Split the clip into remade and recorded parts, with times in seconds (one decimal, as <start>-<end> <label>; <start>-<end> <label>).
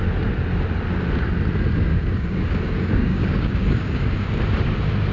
0.0-1.9 recorded; 1.9-4.3 remade; 4.3-5.1 recorded